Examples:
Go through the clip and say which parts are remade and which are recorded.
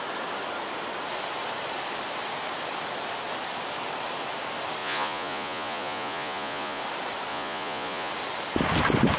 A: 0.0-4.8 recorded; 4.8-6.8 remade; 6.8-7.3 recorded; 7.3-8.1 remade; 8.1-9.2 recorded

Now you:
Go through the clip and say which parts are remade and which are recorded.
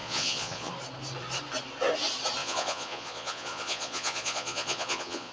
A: 0.0-0.7 remade; 0.7-2.4 recorded; 2.4-5.3 remade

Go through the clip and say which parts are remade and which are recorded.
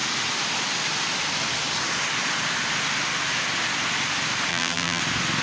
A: 0.0-4.5 recorded; 4.5-5.0 remade; 5.0-5.4 recorded